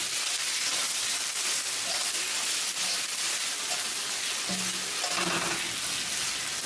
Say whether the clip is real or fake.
real